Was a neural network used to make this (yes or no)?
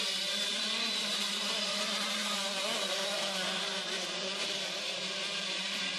yes